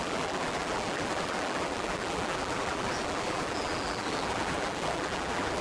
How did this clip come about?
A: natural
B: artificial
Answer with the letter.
B